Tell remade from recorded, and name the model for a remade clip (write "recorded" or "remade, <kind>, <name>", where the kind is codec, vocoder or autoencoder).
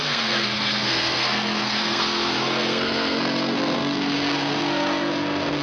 remade, codec, SNAC